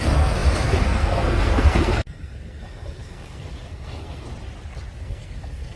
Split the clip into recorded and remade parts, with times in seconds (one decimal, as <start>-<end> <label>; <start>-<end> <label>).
0.0-4.3 remade; 4.3-5.0 recorded; 5.0-5.8 remade